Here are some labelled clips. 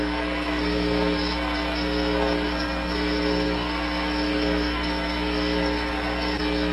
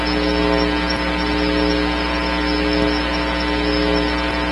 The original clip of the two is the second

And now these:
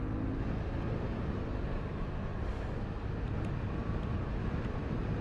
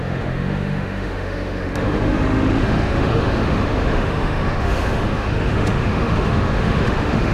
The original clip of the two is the first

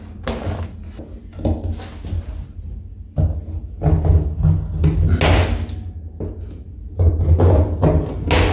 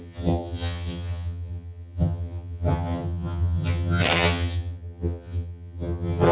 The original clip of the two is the first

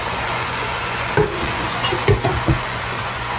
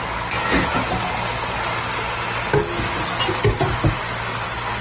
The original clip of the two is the second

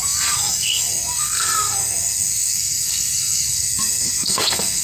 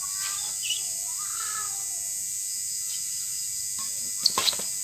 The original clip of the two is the second